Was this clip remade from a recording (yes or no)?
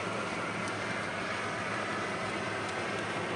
no